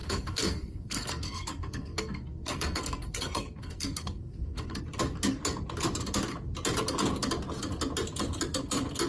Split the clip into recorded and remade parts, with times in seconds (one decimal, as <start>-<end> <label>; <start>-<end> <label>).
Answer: 0.0-4.8 remade; 4.8-9.1 recorded